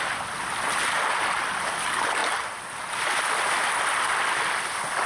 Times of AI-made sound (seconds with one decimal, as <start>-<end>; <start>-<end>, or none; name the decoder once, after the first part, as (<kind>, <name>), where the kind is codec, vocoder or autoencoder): none